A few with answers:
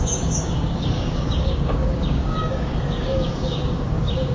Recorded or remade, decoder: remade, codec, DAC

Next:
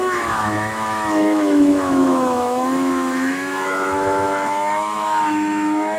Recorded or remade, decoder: remade, autoencoder, DAC-VAE